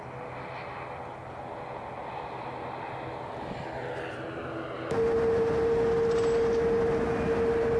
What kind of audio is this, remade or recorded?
recorded